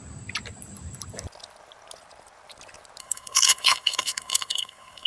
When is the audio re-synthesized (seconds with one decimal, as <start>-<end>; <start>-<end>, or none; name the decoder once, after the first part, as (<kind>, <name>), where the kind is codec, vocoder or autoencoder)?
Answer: 3.0-5.1 (codec, SNAC)